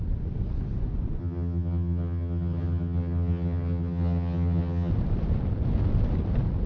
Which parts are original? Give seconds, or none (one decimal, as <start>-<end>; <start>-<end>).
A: 0.0-1.2; 4.9-6.7